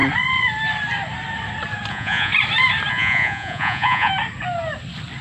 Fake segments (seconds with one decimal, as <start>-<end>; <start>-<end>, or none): 1.9-2.3; 2.9-4.1